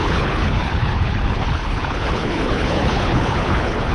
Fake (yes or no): yes